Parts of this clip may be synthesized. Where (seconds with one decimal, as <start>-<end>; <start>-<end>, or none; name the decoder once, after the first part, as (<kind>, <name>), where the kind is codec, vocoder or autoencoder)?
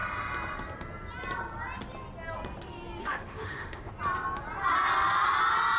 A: 3.0-3.9 (autoencoder, DAC-VAE)